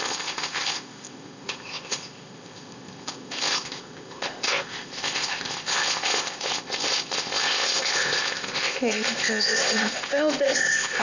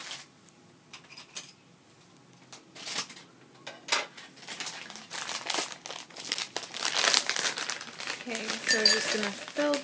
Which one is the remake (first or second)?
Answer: first